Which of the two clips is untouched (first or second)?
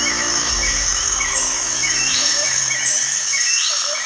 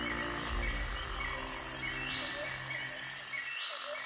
second